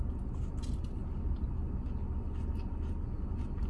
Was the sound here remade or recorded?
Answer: recorded